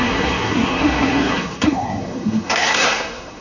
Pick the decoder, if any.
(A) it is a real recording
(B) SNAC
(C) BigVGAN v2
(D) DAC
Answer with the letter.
B